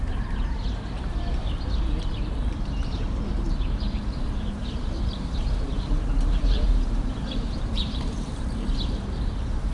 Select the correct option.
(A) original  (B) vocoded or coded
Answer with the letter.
B